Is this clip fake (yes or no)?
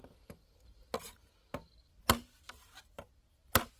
no